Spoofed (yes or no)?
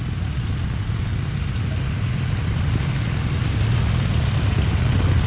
no